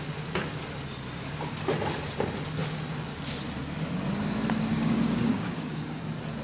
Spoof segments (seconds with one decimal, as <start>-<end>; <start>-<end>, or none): 4.7-6.0